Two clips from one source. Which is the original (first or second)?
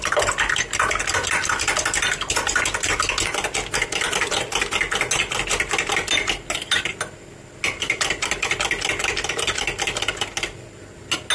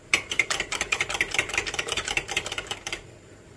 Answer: first